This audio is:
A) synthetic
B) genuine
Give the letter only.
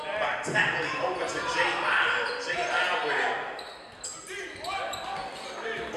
B